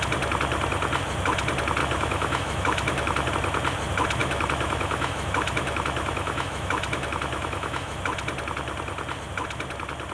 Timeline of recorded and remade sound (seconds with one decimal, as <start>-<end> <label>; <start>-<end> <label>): 0.0-1.8 recorded; 1.8-3.3 remade; 3.3-4.2 recorded; 4.2-8.0 remade; 8.0-10.1 recorded